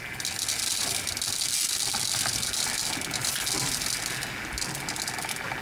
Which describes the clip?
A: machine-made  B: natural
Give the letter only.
B